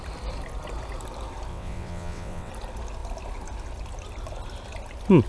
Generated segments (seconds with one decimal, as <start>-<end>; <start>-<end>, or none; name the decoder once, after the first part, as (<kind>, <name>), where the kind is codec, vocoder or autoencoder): 1.5-2.5 (vocoder, WaveNeXt)